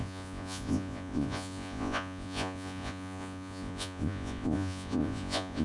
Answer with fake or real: fake